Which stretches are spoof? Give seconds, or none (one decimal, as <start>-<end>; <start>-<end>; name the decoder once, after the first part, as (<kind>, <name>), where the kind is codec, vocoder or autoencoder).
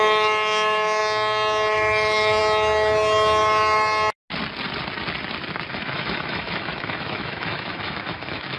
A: 0.0-1.0 (autoencoder, DAC-VAE); 1.7-2.4; 5.7-8.6